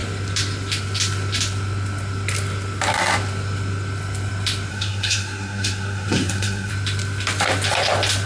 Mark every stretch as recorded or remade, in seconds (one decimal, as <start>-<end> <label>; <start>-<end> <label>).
0.0-4.7 recorded; 4.7-6.7 remade; 6.7-8.3 recorded